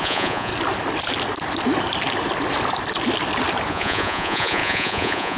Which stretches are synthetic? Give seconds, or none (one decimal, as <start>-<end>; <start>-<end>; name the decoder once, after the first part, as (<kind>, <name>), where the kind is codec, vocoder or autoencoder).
0.0-0.5 (vocoder, Vocos); 3.7-5.4